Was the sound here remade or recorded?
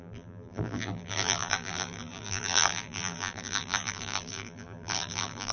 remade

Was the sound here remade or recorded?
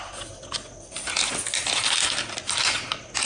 recorded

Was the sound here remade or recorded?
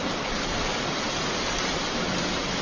recorded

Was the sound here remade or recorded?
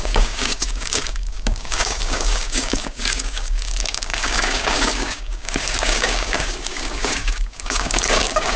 remade